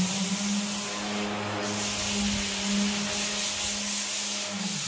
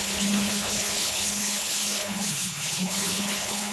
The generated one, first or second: second